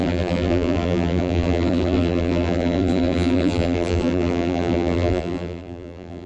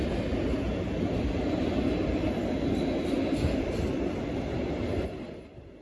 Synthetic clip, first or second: first